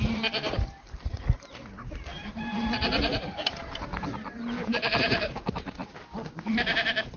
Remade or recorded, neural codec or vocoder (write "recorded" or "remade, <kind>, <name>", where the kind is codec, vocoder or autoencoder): remade, vocoder, BigVGAN v2